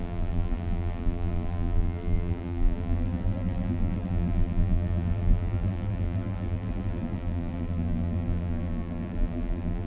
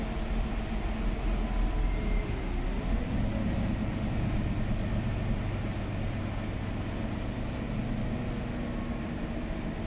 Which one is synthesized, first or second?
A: first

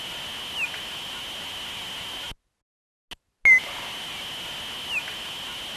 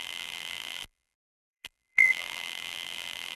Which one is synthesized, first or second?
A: second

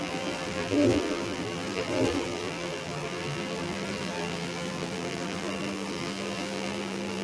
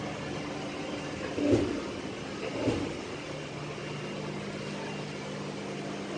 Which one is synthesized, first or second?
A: first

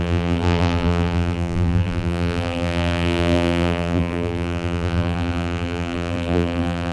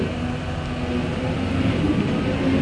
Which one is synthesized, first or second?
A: first